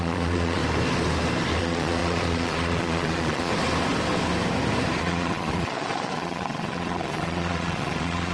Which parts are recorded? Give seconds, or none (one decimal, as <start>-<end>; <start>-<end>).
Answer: 0.6-1.6; 3.5-5.0